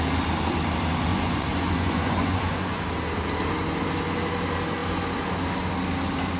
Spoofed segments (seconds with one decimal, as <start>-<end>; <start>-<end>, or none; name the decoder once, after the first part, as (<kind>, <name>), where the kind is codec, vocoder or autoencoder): 1.1-2.8 (vocoder, Vocos)